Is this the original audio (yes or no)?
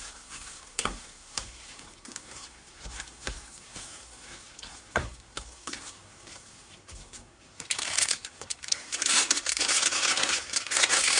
no